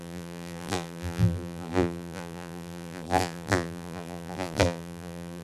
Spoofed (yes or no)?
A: yes